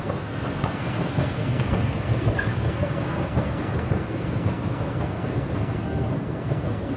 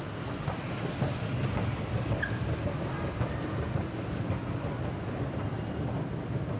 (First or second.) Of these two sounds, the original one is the second